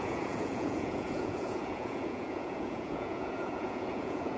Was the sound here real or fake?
fake